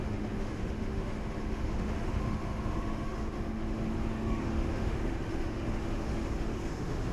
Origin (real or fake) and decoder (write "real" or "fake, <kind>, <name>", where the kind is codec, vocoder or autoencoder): fake, autoencoder, DAC-VAE